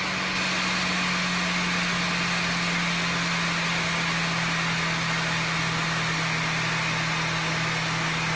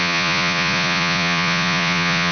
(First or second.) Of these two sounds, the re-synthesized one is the second